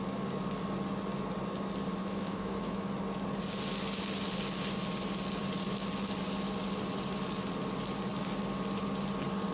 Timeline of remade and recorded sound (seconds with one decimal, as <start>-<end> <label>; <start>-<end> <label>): 0.0-2.0 recorded; 2.0-2.9 remade; 2.9-9.5 recorded